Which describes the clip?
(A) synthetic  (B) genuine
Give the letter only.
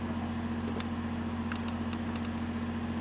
B